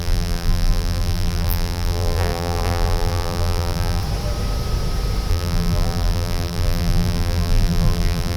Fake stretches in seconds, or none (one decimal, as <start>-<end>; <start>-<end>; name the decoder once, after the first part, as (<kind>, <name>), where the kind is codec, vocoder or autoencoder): 0.0-4.0 (vocoder, BigVGAN v2); 5.3-8.4